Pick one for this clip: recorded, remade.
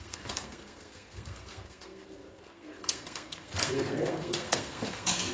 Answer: remade